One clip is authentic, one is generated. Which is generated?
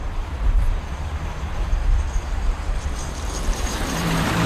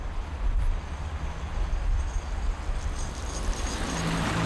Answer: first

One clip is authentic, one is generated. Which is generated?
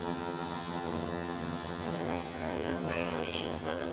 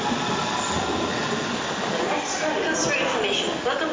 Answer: first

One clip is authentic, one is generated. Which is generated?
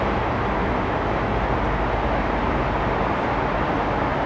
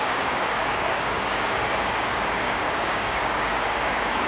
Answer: second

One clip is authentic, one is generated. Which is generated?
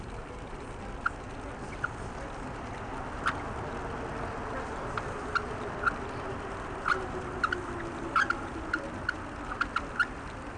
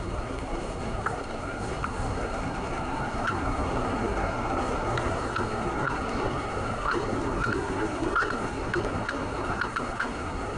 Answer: second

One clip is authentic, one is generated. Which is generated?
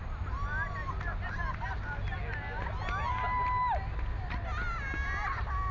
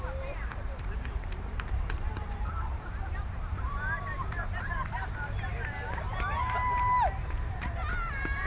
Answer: second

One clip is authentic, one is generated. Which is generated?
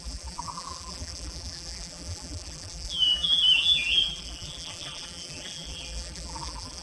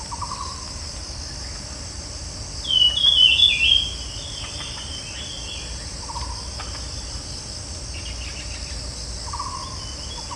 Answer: first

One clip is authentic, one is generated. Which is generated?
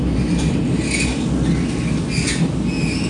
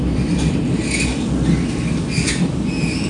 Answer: second